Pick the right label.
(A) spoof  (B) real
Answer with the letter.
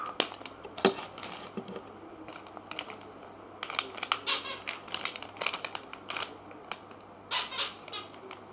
B